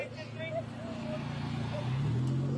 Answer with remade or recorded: recorded